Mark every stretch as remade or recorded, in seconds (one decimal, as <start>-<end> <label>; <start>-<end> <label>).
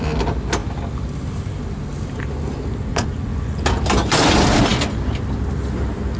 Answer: 0.0-2.9 recorded; 2.9-3.6 remade; 3.6-6.2 recorded